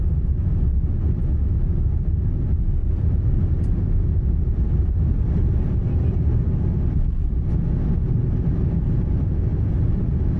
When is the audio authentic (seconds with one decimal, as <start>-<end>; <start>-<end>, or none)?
0.0-2.8; 7.5-9.5